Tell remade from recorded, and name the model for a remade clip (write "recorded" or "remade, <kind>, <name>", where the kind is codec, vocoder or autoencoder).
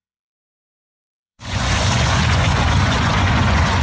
remade, vocoder, Vocos